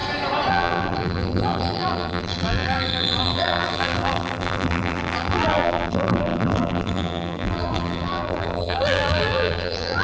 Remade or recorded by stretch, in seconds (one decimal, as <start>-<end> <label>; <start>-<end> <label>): 0.0-0.5 recorded; 0.5-10.0 remade